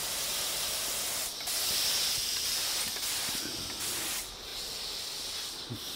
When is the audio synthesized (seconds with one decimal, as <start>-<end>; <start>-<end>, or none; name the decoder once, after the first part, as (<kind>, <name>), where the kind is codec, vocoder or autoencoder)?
none